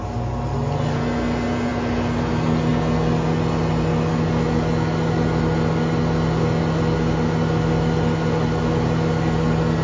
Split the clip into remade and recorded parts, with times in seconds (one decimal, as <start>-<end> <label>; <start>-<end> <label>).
0.0-9.8 recorded